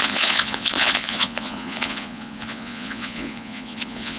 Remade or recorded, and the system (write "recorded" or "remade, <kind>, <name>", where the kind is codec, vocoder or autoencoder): remade, vocoder, Vocos